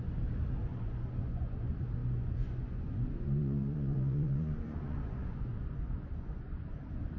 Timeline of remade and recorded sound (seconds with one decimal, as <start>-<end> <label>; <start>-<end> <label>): 0.0-7.2 remade